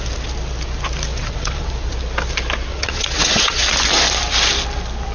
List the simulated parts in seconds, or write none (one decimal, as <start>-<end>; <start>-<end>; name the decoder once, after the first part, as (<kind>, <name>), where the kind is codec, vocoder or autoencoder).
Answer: 1.1-1.7 (vocoder, WaveNeXt); 2.7-3.6